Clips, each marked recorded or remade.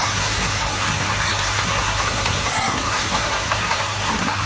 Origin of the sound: remade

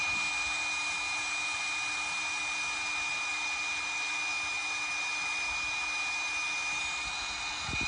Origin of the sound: recorded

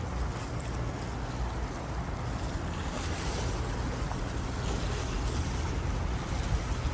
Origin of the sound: recorded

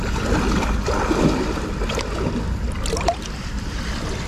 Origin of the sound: recorded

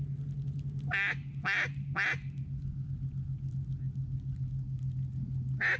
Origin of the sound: recorded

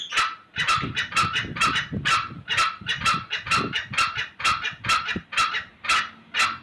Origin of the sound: recorded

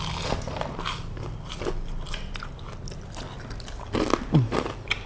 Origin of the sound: recorded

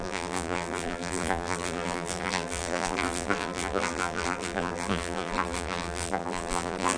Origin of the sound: remade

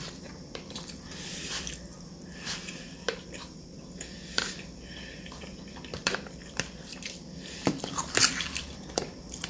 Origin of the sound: remade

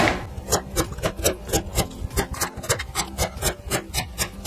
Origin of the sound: recorded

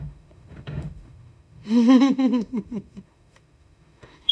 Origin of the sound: remade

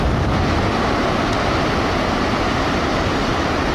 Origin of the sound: recorded